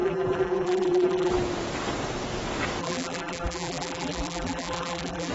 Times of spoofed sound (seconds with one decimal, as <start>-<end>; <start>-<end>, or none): 0.0-1.3; 2.8-5.3